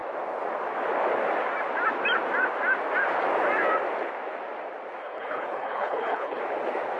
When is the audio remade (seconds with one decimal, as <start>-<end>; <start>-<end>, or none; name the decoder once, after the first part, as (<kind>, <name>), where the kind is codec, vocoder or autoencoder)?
5.0-6.4 (codec, HILCodec)